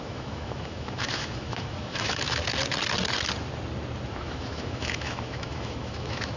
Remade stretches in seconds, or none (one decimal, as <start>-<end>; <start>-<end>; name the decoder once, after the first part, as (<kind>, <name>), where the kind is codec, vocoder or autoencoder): 0.0-2.4 (autoencoder, DAC-VAE); 4.1-6.4